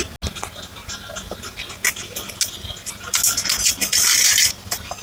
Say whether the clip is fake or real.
real